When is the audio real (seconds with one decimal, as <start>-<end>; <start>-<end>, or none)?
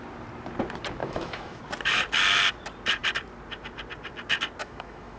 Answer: 0.0-1.0; 1.6-4.6